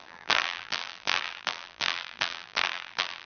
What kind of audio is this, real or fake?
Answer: fake